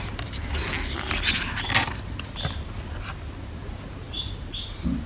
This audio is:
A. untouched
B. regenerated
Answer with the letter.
A